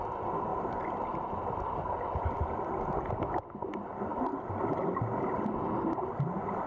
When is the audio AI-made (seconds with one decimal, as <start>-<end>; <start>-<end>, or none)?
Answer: 0.5-2.3